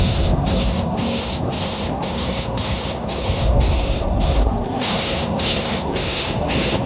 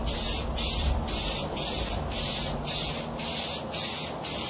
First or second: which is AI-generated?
first